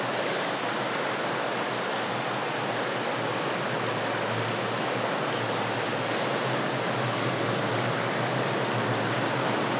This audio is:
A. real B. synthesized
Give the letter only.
A